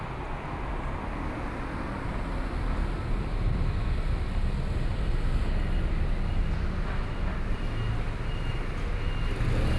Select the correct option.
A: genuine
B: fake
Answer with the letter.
A